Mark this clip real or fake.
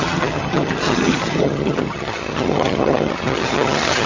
fake